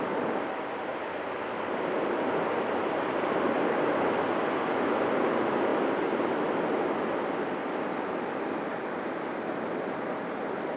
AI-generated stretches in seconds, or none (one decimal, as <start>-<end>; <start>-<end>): none